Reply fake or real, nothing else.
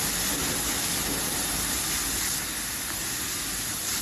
real